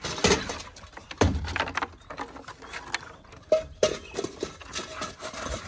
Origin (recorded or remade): recorded